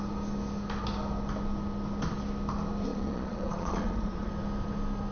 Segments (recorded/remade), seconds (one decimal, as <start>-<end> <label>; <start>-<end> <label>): 0.0-2.9 recorded; 2.9-4.3 remade; 4.3-5.1 recorded